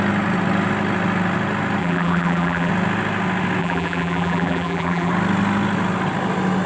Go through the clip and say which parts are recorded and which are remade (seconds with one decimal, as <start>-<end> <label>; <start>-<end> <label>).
0.0-1.8 recorded; 1.8-2.7 remade; 2.7-3.6 recorded; 3.6-5.1 remade; 5.1-6.7 recorded